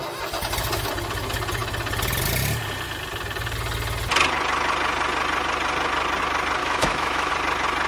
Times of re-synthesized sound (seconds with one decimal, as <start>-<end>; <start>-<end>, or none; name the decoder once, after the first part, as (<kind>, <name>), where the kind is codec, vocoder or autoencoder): 6.6-7.3 (autoencoder, DAC-VAE)